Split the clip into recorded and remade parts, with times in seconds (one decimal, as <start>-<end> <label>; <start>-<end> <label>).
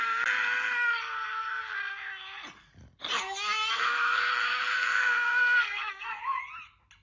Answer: 0.0-3.7 recorded; 3.7-4.3 remade; 4.3-4.7 recorded; 4.7-6.2 remade; 6.2-7.0 recorded